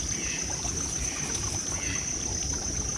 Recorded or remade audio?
recorded